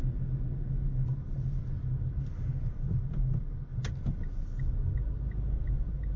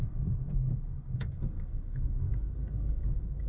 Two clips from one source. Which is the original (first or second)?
first